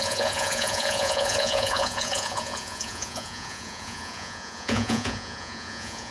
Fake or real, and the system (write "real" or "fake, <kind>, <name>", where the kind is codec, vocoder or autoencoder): fake, vocoder, Vocos